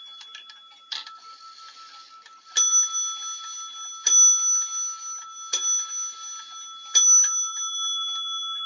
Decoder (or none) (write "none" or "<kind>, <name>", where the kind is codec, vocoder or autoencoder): none